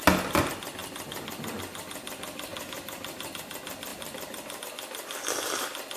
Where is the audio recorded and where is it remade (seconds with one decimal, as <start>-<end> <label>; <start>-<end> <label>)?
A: 0.0-2.5 recorded; 2.5-3.3 remade; 3.3-3.9 recorded; 3.9-4.6 remade; 4.6-6.0 recorded